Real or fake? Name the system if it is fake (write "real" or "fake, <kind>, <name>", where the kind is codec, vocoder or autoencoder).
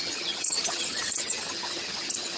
fake, vocoder, HiFi-GAN